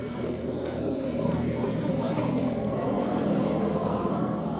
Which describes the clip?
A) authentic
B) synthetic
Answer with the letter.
B